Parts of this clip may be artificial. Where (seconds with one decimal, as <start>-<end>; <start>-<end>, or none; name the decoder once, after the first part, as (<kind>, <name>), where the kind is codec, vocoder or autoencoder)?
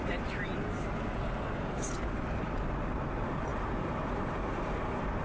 0.0-0.5 (vocoder, BigVGAN v2); 1.7-5.2